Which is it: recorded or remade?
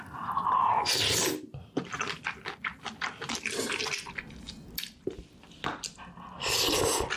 recorded